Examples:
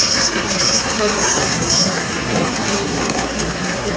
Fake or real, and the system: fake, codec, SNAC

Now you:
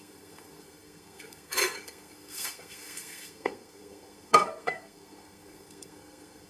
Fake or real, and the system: fake, codec, SNAC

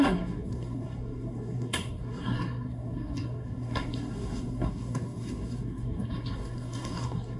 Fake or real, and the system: fake, codec, SNAC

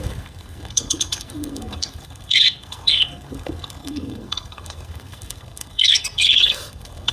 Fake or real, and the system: fake, codec, SNAC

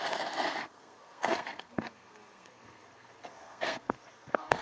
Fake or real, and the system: fake, codec, SNAC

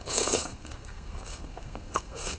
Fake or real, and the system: fake, codec, SNAC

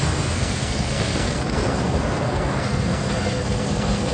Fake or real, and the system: fake, codec, SNAC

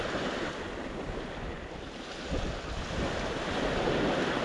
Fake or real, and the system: real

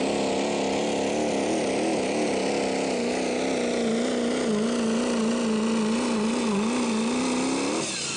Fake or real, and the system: real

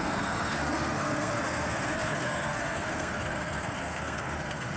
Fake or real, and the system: fake, codec, SNAC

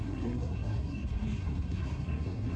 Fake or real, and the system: fake, codec, SNAC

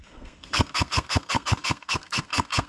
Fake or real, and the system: fake, codec, SNAC